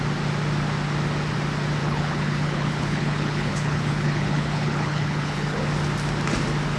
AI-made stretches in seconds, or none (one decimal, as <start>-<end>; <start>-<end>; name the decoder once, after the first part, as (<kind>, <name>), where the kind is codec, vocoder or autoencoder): 1.8-5.6 (codec, HILCodec)